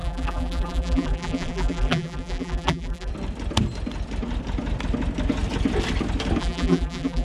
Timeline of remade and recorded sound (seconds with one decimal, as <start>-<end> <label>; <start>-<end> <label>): 0.0-3.1 remade; 3.1-6.4 recorded; 6.4-7.2 remade